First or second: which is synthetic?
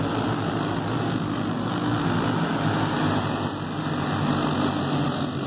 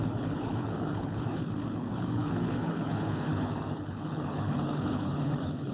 second